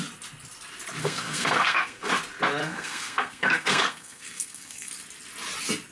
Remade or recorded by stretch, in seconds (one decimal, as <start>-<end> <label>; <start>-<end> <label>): 0.0-1.0 recorded; 1.0-2.1 remade; 2.1-2.6 recorded; 2.6-4.9 remade; 4.9-5.9 recorded